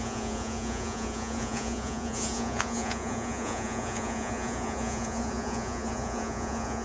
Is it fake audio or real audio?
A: fake